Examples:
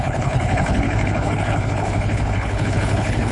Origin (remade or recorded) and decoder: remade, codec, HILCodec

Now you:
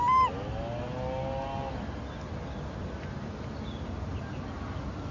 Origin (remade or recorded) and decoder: recorded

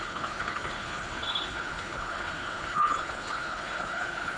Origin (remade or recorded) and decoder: remade, codec, HILCodec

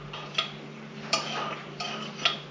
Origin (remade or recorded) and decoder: recorded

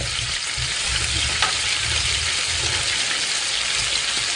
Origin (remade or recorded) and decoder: recorded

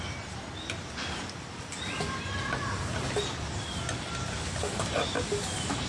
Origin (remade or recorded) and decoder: recorded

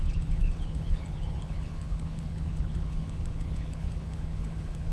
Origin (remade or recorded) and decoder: remade, codec, HILCodec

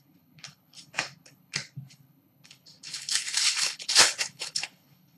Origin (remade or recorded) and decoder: remade, codec, HILCodec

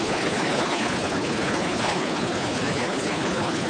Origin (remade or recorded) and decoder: remade, codec, HILCodec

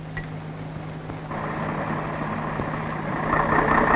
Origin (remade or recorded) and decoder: recorded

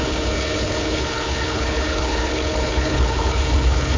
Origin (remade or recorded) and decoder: remade, codec, HILCodec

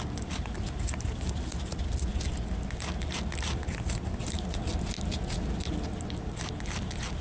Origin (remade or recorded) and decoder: recorded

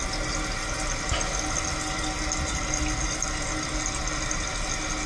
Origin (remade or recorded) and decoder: recorded